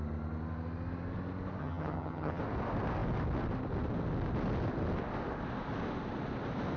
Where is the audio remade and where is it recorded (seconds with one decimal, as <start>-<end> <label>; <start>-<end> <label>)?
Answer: 0.0-1.6 recorded; 1.6-2.4 remade; 2.4-6.8 recorded